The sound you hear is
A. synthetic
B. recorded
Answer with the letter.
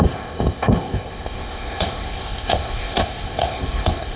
A